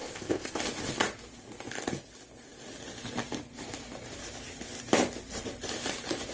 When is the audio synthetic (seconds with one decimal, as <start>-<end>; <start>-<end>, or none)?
0.0-0.6